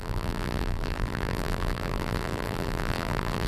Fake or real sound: fake